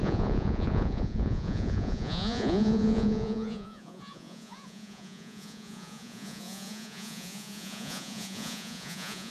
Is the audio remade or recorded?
remade